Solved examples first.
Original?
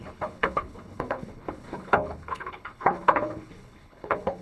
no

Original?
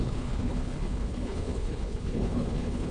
no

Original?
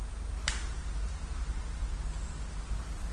yes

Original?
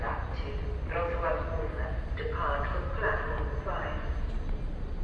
yes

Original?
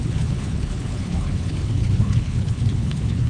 no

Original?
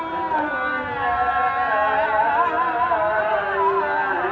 yes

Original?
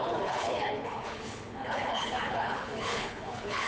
no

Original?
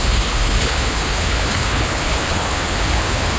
no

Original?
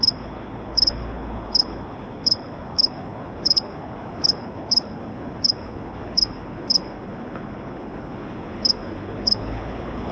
no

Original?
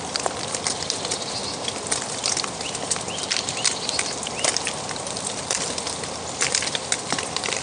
yes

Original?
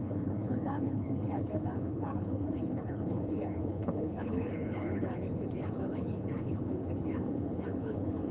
no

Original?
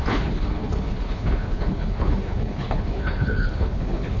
no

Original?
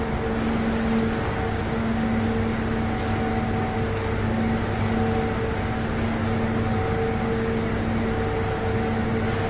yes